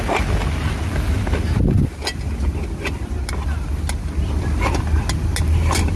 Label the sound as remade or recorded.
recorded